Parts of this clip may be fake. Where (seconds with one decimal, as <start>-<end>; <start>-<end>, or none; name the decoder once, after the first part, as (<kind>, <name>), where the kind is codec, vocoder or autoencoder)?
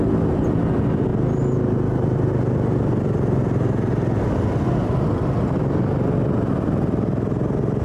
none